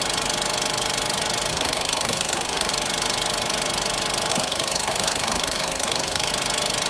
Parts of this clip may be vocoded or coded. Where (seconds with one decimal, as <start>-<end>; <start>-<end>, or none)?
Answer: 1.5-2.7; 4.3-6.3